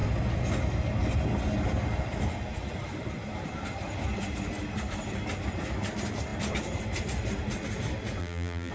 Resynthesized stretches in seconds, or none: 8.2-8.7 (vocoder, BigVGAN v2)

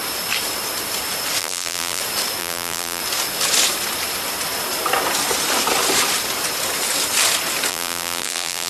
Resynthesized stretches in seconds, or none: 1.4-2.0 (vocoder, BigVGAN v2); 2.4-3.0; 7.7-8.7

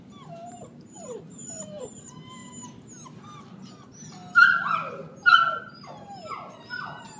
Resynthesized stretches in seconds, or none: 0.0-2.4 (vocoder, BigVGAN v2); 3.2-7.2

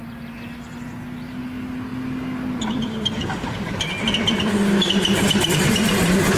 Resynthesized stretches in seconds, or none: none